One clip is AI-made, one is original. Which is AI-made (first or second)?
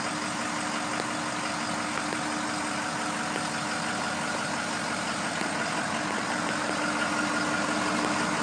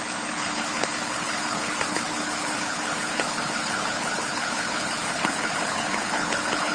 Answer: second